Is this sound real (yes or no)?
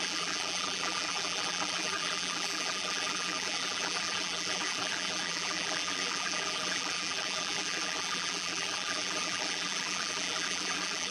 no